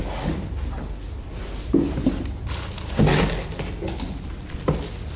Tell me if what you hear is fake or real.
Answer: real